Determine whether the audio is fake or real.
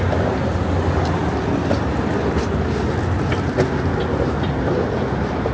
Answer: real